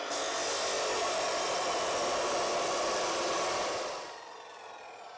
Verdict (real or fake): real